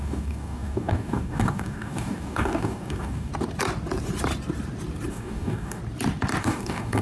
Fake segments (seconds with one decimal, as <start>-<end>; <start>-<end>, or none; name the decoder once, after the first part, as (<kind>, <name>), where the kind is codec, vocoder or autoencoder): 0.0-3.3 (codec, DAC); 5.1-5.8; 6.4-7.0